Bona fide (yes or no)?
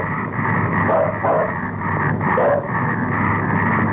yes